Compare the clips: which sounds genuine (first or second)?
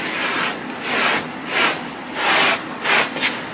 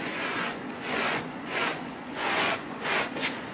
first